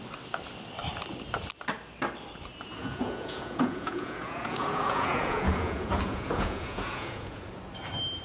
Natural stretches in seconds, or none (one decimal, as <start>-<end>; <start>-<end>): 0.0-2.8; 7.5-8.2